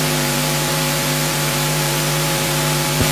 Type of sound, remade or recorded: remade